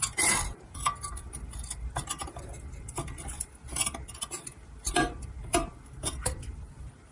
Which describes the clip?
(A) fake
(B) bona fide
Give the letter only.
B